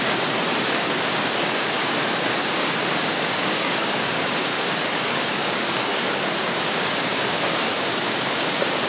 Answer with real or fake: fake